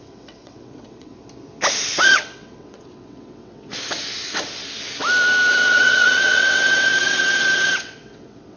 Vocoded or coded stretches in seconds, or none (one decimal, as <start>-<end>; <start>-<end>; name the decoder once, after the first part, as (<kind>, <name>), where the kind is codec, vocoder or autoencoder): 0.0-1.1 (vocoder, WaveNeXt); 2.0-3.7; 5.5-8.6